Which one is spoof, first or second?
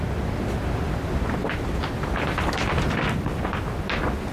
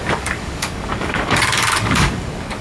second